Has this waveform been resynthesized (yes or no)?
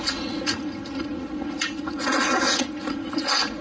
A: yes